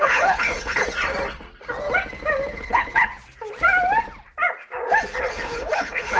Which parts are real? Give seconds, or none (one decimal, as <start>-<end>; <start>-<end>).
0.8-2.5; 3.1-5.3